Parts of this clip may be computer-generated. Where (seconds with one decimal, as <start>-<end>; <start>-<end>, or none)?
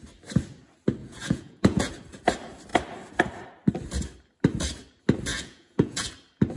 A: 1.0-1.9; 5.3-6.1